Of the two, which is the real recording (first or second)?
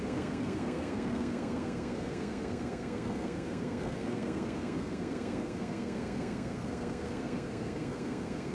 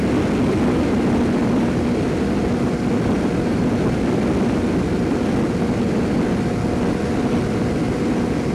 second